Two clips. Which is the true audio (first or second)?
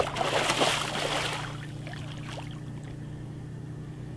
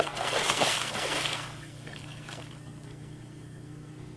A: first